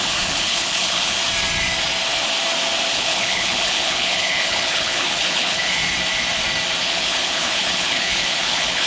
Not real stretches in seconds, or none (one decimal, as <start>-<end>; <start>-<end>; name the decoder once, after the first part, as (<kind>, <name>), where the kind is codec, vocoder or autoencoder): 0.0-1.2 (codec, HILCodec); 2.9-5.8; 6.8-8.9